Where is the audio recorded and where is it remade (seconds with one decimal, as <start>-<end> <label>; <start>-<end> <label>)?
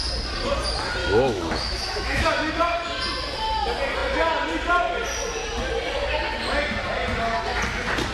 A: 0.0-1.0 recorded; 1.0-2.5 remade; 2.5-8.1 recorded